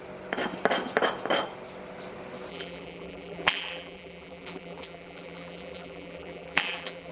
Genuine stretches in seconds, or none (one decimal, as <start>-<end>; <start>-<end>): 0.0-2.5